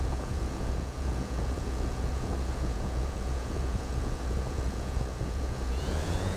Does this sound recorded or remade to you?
remade